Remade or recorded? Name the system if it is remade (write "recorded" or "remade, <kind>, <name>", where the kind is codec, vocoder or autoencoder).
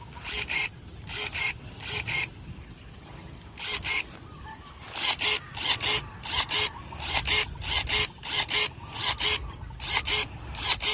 recorded